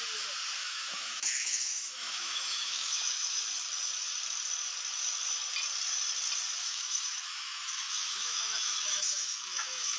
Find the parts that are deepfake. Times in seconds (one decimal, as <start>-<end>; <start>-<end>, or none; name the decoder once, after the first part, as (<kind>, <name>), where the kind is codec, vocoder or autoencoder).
0.6-3.4 (autoencoder, DAC-VAE); 6.6-10.0